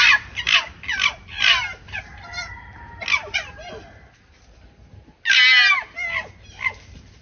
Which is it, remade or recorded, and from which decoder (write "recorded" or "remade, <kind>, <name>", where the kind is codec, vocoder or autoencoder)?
recorded